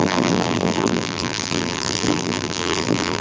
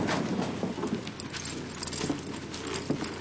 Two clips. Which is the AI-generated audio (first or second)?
first